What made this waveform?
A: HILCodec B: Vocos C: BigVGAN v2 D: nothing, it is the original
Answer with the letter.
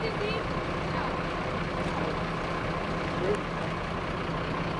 D